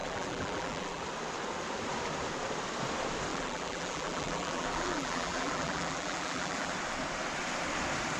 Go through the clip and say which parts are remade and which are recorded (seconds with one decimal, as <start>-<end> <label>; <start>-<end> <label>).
0.0-1.0 remade; 1.0-3.3 recorded; 3.3-6.7 remade; 6.7-8.2 recorded